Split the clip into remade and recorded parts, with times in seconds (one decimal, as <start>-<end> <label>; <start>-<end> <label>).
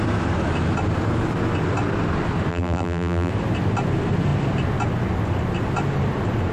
0.0-2.5 recorded; 2.5-3.3 remade; 3.3-6.5 recorded